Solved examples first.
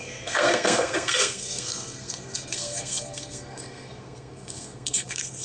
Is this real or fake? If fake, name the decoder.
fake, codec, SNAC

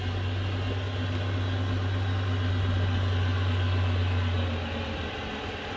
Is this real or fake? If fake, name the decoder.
real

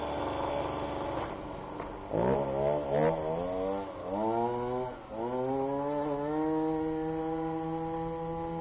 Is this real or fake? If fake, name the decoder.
real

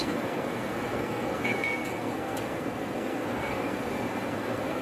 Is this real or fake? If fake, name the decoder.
fake, codec, SNAC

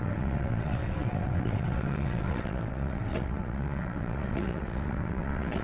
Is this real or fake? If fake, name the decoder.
fake, vocoder, WaveNeXt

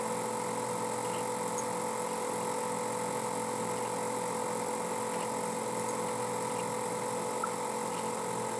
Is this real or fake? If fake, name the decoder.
real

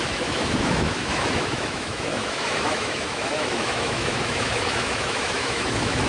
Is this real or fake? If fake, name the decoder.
fake, autoencoder, DAC-VAE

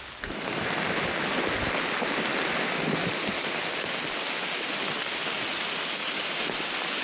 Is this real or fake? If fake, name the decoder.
real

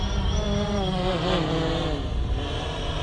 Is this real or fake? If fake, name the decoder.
real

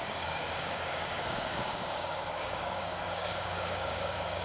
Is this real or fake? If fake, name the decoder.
fake, codec, DAC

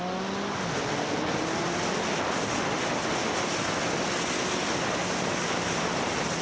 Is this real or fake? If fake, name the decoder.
real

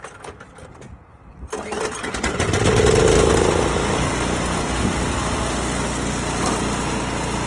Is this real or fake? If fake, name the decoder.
real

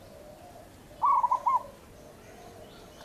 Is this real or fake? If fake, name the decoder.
real